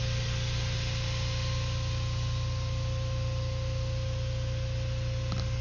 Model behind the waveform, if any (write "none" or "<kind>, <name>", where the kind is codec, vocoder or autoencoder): none